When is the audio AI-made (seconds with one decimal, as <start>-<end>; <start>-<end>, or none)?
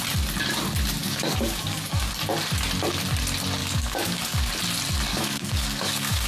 1.0-2.1; 3.6-4.5; 5.1-6.3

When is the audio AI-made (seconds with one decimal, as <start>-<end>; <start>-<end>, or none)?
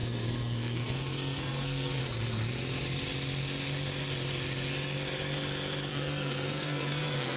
0.0-2.0; 5.9-7.4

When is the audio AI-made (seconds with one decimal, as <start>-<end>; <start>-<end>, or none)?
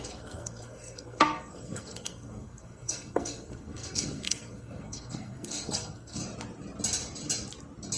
0.0-6.2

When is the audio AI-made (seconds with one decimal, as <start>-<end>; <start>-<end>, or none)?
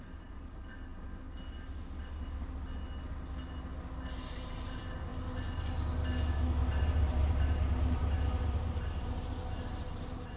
0.0-0.9; 4.2-5.1; 6.6-10.4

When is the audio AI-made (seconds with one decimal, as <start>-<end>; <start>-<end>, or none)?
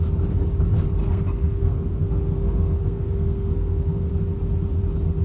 1.0-4.1